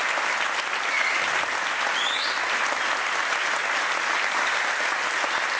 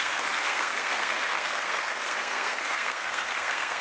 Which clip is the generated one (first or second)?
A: second